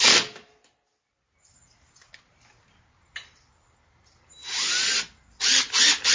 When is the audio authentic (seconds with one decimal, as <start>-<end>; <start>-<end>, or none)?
0.0-6.1